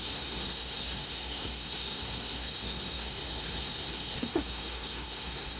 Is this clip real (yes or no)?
no